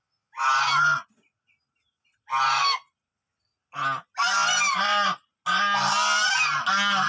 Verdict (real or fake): real